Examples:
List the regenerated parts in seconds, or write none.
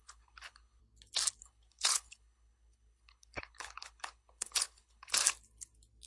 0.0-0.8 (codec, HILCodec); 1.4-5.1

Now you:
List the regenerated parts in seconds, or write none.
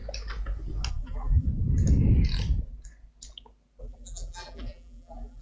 0.9-1.5 (vocoder, BigVGAN v2); 3.8-5.4